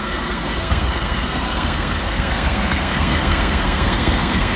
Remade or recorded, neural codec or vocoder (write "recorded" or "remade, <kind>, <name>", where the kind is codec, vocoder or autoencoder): remade, codec, SNAC